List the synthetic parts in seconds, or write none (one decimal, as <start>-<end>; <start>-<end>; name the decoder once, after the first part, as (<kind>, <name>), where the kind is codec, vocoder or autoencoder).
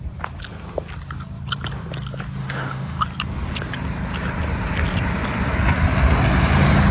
2.4-3.0 (autoencoder, DAC-VAE)